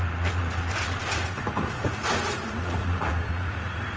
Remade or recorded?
remade